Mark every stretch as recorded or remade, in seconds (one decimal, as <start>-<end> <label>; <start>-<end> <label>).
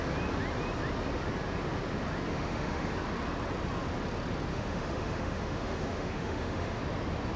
0.0-2.3 recorded; 2.3-2.9 remade; 2.9-4.5 recorded; 4.5-6.8 remade; 6.8-7.4 recorded